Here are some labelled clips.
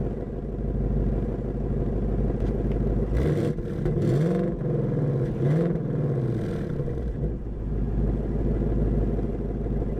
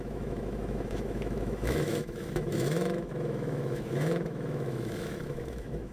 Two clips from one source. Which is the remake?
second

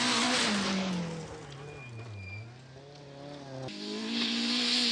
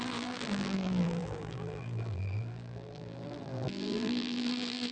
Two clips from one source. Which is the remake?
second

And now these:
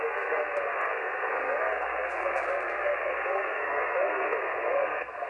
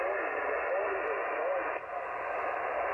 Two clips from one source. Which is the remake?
first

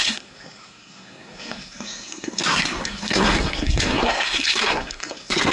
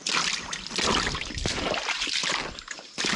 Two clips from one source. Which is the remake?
first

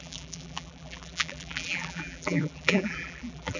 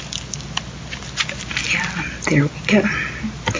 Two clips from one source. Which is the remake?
first